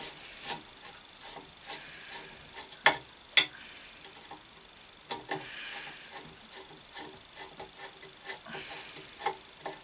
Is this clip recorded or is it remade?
recorded